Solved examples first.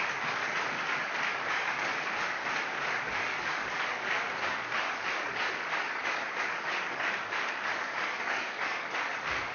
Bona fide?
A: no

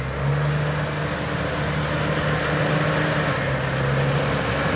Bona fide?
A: yes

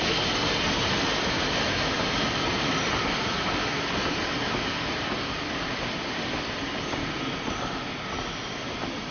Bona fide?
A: yes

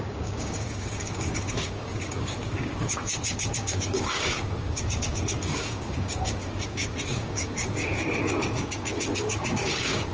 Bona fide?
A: no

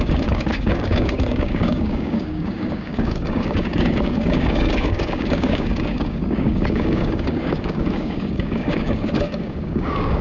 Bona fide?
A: no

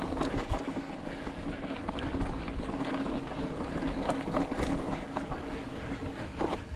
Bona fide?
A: no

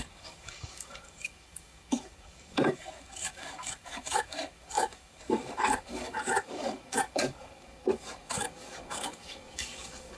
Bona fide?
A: no